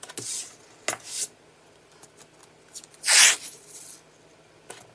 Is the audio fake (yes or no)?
no